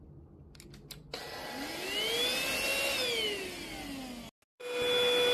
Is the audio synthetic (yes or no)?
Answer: no